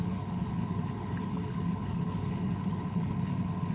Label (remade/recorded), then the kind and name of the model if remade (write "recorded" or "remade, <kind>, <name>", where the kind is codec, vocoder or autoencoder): remade, codec, HILCodec